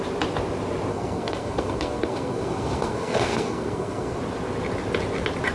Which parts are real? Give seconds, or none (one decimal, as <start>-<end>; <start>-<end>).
0.0-0.9; 4.2-5.5

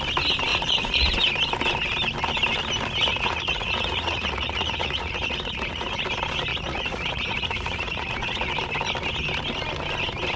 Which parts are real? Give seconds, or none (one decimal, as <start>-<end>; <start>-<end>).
0.0-0.5; 1.2-3.1; 6.0-6.5; 8.5-10.4

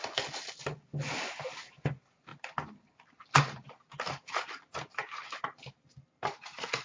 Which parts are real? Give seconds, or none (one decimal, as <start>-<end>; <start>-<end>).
0.0-6.8